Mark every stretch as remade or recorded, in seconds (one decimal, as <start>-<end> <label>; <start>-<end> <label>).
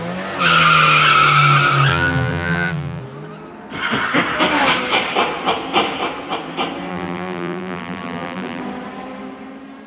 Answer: 0.0-1.9 recorded; 1.9-3.0 remade; 3.0-6.9 recorded; 6.9-8.6 remade; 8.6-9.9 recorded